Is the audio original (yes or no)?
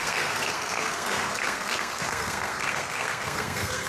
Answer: no